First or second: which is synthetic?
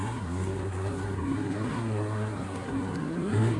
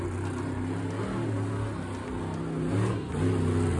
first